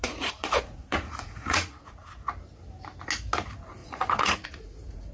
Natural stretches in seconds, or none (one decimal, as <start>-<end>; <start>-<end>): 2.1-3.8